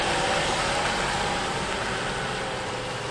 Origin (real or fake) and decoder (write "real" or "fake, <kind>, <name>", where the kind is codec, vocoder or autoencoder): real